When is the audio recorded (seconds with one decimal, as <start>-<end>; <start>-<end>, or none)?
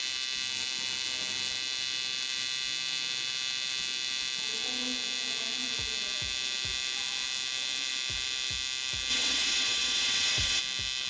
0.0-9.1; 10.6-11.1